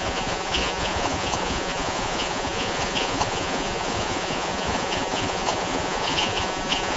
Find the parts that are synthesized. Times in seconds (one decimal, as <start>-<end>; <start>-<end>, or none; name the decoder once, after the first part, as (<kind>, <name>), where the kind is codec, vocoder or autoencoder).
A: 0.0-7.0 (vocoder, Vocos)